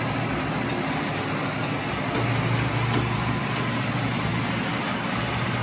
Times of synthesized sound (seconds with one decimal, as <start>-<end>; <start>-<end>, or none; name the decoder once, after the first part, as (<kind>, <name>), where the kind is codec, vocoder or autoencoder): none

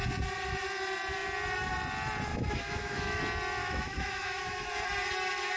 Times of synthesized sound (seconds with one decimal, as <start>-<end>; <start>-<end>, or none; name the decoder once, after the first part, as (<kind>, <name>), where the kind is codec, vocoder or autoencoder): 2.3-3.2 (autoencoder, DAC-VAE); 3.6-4.7

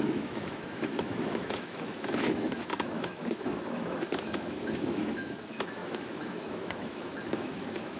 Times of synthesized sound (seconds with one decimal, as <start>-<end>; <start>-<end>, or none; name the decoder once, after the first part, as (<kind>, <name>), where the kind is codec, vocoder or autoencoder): 0.0-8.0 (autoencoder, DAC-VAE)

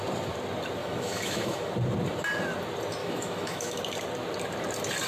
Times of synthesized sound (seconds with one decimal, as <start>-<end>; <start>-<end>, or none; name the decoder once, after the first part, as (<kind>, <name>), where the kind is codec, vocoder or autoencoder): 0.8-1.7 (autoencoder, DAC-VAE); 3.0-3.8

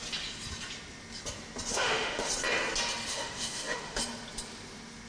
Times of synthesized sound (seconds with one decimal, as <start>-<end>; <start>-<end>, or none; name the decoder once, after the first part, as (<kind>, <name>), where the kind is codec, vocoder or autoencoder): 1.7-2.3 (autoencoder, DAC-VAE); 3.1-4.0